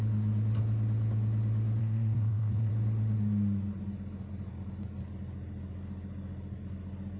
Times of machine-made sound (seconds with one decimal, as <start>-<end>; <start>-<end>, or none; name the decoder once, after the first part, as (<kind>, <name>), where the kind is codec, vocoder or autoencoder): 1.8-2.7 (codec, SNAC)